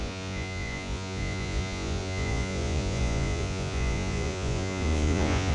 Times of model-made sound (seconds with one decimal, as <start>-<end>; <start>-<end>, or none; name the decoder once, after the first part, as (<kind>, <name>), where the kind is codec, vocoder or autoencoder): 0.0-5.5 (vocoder, Vocos)